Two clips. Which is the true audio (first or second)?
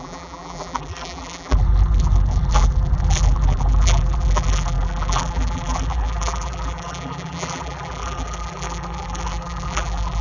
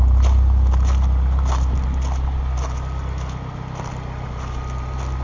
second